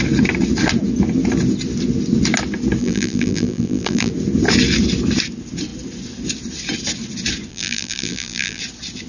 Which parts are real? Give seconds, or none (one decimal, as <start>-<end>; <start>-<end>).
0.0-2.8; 4.1-7.5; 8.6-9.1